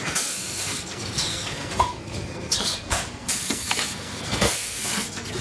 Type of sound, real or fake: fake